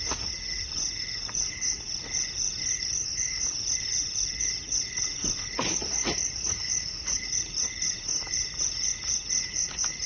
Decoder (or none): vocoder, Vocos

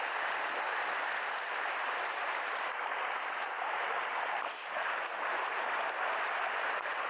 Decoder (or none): none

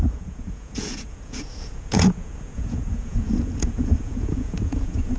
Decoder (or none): vocoder, Vocos